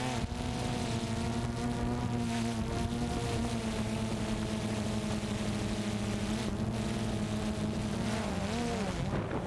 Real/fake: real